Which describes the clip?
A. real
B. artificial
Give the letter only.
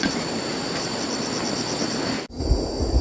A